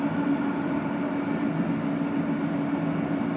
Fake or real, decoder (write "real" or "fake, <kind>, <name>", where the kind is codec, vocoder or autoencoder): real